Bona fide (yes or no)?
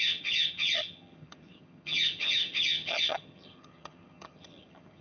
no